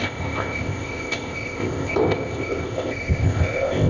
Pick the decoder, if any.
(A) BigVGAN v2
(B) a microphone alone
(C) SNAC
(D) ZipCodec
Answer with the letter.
D